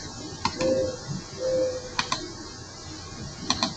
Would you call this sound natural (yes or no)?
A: yes